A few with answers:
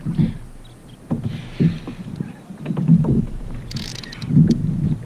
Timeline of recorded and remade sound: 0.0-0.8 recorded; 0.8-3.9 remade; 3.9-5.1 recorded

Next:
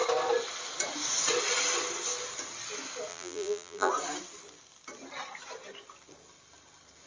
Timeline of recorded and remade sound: 0.0-3.1 recorded; 3.1-3.9 remade; 3.9-7.1 recorded

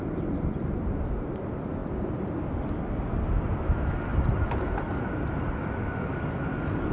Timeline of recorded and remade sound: 0.0-4.1 recorded; 4.1-5.4 remade; 5.4-6.9 recorded

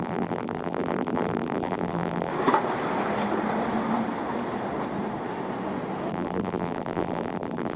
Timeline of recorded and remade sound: 0.0-2.3 remade; 2.3-6.1 recorded; 6.1-7.8 remade